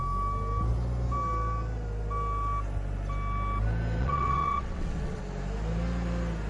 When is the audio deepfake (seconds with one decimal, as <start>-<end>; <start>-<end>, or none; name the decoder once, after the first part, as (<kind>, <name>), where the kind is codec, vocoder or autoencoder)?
4.0-5.2 (vocoder, WaveNeXt)